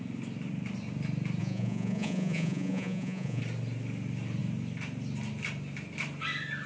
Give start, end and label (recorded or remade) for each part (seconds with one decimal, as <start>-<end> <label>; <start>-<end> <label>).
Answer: 0.0-1.4 recorded; 1.4-3.4 remade; 3.4-6.7 recorded